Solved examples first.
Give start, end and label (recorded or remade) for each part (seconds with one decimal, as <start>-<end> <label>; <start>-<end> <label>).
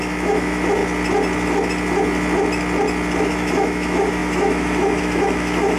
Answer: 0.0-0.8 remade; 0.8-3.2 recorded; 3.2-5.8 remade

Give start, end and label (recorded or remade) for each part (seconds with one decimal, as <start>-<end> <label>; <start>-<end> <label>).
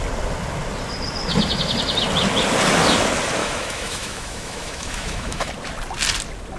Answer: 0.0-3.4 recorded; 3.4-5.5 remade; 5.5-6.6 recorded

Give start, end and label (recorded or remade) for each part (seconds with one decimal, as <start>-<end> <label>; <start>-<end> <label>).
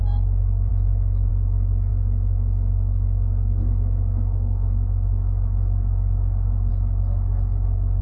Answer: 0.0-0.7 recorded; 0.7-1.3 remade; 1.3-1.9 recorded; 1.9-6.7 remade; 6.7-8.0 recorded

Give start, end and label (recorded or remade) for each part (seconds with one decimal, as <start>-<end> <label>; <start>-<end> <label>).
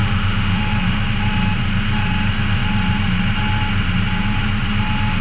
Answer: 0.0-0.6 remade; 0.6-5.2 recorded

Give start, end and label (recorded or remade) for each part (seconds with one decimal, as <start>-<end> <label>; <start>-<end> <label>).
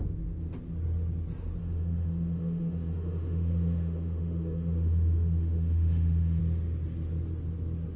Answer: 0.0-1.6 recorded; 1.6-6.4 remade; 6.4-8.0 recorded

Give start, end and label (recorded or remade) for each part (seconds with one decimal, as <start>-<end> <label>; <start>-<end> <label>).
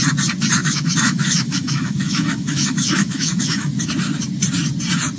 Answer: 0.0-0.6 recorded; 0.6-3.7 remade; 3.7-5.2 recorded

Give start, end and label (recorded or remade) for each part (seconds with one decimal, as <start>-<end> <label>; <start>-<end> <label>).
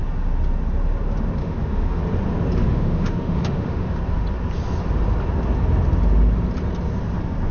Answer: 0.0-1.4 recorded; 1.4-2.0 remade; 2.0-2.6 recorded; 2.6-4.0 remade; 4.0-7.5 recorded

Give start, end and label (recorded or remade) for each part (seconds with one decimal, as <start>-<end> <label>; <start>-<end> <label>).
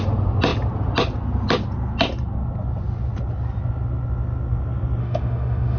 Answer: 0.0-5.0 recorded; 5.0-5.8 remade